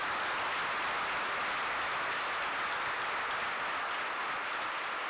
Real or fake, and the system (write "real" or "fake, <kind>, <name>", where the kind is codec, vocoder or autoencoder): real